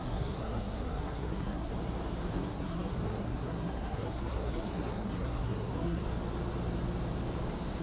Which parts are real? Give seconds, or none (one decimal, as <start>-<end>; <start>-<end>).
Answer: 1.7-2.3; 6.0-7.8